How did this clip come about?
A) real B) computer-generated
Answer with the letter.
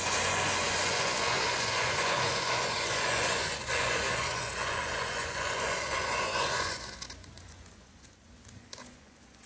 B